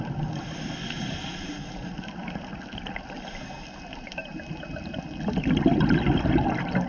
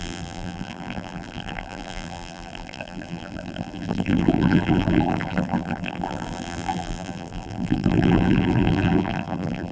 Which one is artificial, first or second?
second